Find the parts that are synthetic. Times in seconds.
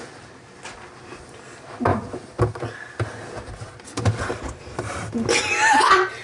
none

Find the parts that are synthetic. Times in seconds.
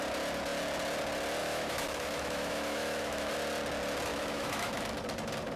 1.4-3.3; 4.1-5.0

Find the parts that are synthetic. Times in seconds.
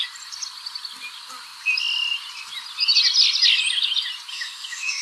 4.3-5.0